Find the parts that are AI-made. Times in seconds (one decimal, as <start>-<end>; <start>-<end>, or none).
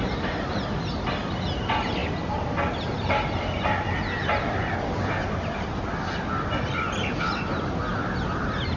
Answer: none